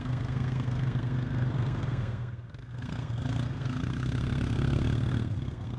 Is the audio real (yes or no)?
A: no